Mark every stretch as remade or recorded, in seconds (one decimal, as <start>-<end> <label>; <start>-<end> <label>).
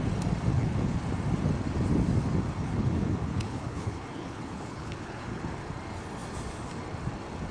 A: 0.0-0.5 recorded; 0.5-1.0 remade; 1.0-2.6 recorded; 2.6-5.4 remade; 5.4-7.5 recorded